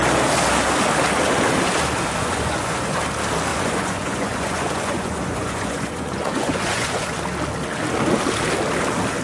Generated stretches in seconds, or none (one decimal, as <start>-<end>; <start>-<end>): 2.2-3.0; 3.5-7.2